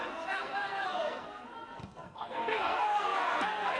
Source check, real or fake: fake